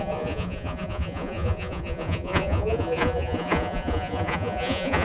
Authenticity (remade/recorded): remade